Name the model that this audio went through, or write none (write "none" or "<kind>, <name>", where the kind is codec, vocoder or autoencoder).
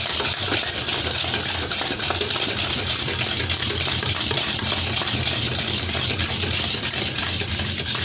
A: vocoder, BigVGAN v2